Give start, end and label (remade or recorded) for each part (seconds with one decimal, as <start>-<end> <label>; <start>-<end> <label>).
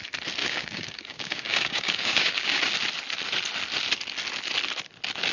0.0-0.4 recorded; 0.4-2.6 remade; 2.6-5.3 recorded